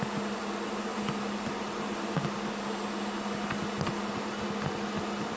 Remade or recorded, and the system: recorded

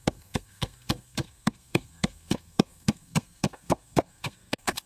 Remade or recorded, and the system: remade, codec, SNAC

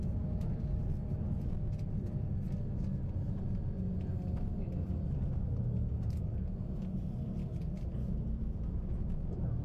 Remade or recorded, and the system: recorded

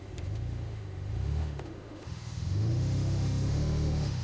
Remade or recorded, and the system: remade, autoencoder, DAC-VAE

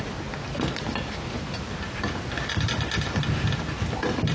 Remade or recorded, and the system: recorded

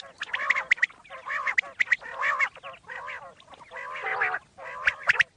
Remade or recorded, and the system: recorded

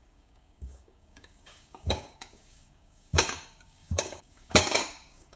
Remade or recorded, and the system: remade, codec, DAC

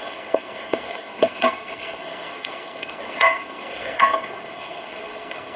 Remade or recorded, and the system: remade, codec, SNAC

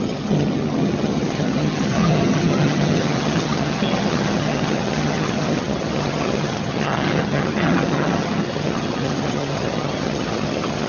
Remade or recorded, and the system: remade, vocoder, HiFi-GAN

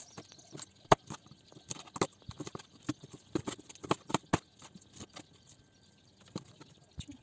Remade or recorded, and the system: recorded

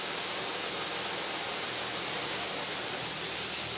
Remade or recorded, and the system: recorded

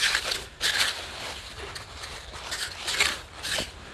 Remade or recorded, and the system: recorded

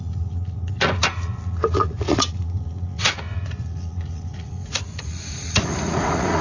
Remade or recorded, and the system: remade, vocoder, Vocos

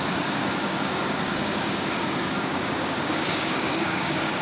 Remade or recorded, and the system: remade, codec, DAC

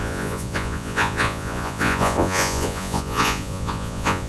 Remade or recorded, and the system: remade, vocoder, Vocos